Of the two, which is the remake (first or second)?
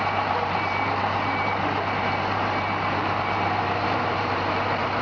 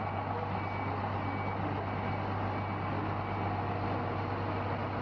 first